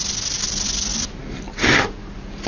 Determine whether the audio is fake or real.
real